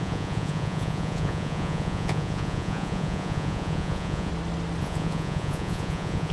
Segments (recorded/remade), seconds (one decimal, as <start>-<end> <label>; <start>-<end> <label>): 0.0-4.3 remade; 4.3-4.8 recorded; 4.8-6.3 remade

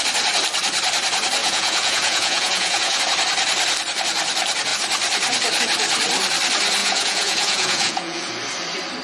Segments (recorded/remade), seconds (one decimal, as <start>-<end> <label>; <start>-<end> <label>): 0.0-1.4 recorded; 1.4-3.0 remade; 3.0-6.8 recorded; 6.8-8.3 remade; 8.3-9.0 recorded

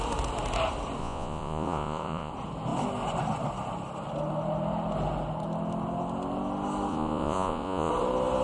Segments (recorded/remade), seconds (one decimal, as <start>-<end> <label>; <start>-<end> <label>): 0.0-1.0 recorded; 1.0-2.3 remade; 2.3-6.9 recorded; 6.9-7.9 remade; 7.9-8.4 recorded